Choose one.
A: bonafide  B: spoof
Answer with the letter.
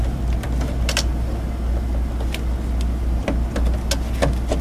A